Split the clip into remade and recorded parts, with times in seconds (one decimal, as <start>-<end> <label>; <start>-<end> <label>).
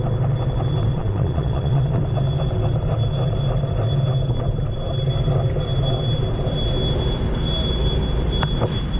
0.0-0.9 recorded; 0.9-1.9 remade; 1.9-9.0 recorded